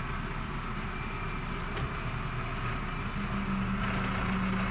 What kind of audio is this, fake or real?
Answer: real